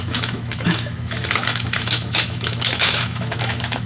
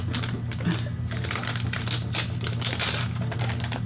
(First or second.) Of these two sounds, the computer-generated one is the first